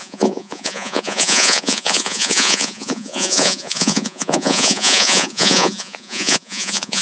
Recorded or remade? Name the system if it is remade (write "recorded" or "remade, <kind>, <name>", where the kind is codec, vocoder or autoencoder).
remade, vocoder, Vocos